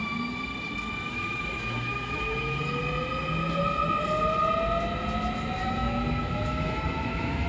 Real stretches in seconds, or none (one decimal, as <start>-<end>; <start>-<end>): 0.0-1.1; 2.8-5.6